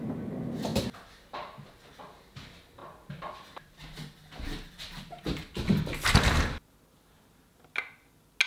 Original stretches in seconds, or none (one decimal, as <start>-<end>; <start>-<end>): 0.0-8.5